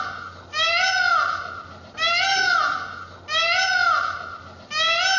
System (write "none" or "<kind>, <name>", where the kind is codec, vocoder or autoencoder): none